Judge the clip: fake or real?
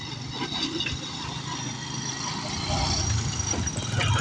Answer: real